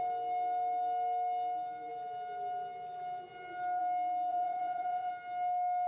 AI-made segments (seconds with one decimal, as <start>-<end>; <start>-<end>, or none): 4.3-5.1